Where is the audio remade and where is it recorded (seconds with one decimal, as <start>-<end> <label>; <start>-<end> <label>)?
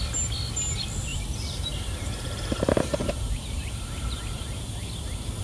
0.0-1.1 recorded; 1.1-4.3 remade; 4.3-5.4 recorded